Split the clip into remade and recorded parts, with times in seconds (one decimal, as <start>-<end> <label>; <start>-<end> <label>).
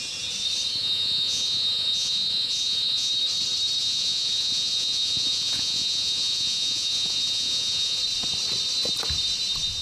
0.0-0.8 recorded; 0.8-3.1 remade; 3.1-3.8 recorded; 3.8-8.0 remade; 8.0-9.8 recorded